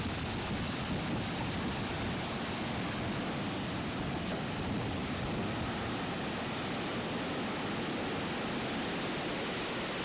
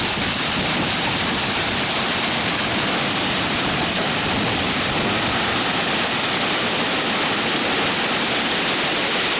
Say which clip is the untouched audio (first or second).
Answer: first